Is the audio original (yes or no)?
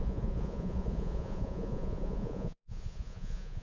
no